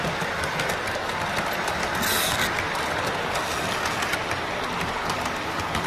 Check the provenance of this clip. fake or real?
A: real